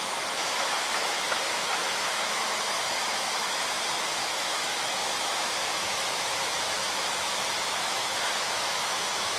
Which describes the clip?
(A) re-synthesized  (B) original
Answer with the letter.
A